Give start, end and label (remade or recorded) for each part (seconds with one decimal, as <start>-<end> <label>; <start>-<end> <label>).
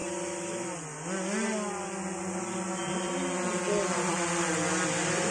0.0-5.3 recorded